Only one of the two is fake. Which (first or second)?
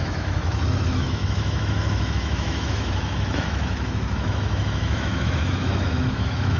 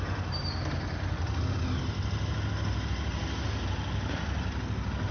first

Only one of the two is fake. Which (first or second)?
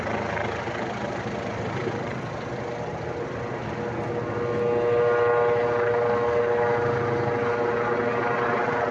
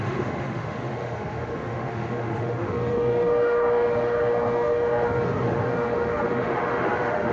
second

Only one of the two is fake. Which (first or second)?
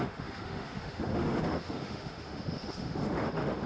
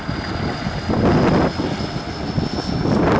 first